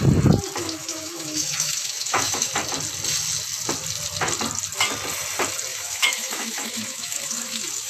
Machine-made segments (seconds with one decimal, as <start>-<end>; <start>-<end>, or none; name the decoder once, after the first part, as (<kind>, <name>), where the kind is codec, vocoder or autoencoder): 0.6-2.5 (autoencoder, DAC-VAE); 5.7-7.9